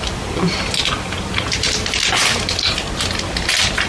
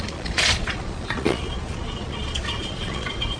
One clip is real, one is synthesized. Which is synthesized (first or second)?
second